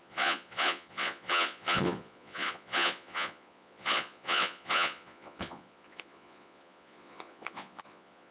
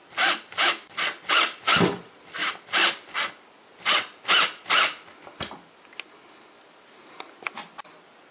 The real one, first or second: second